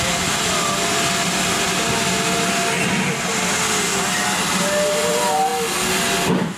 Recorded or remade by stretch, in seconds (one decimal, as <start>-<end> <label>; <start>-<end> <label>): 0.0-6.6 recorded